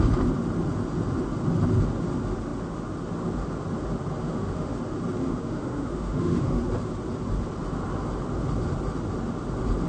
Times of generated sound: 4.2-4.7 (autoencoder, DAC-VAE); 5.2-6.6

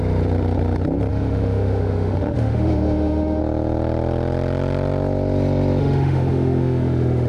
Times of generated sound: 1.1-3.4 (autoencoder, DAC-VAE); 5.8-7.3

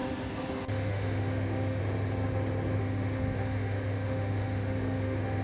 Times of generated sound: 0.7-1.8 (autoencoder, DAC-VAE); 2.8-5.4

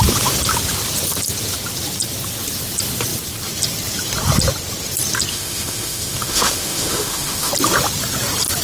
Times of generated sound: 5.3-7.5 (autoencoder, DAC-VAE)

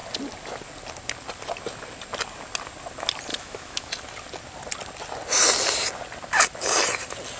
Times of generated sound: 3.3-3.9 (autoencoder, DAC-VAE)

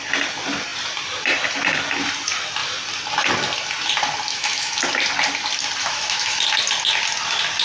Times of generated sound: 4.3-4.8 (autoencoder, DAC-VAE); 5.8-6.4

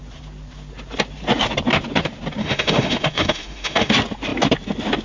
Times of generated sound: 2.4-3.9 (autoencoder, DAC-VAE)